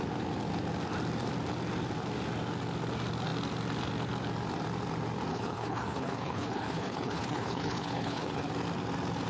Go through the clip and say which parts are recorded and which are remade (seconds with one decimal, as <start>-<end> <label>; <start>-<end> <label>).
0.0-5.3 recorded; 5.3-8.5 remade; 8.5-9.3 recorded